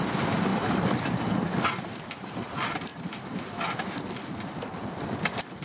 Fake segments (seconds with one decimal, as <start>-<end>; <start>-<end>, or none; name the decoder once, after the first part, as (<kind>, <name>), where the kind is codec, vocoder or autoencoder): none